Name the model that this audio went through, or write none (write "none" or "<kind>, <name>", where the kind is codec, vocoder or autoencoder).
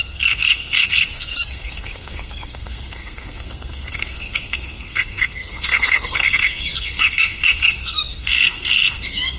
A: codec, SNAC